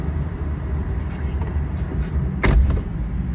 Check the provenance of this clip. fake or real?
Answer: real